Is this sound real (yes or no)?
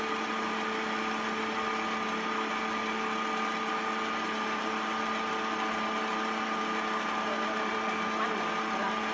yes